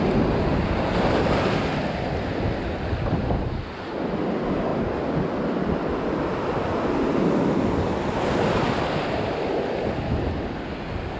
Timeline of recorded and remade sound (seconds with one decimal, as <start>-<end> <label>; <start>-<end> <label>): 0.0-11.2 recorded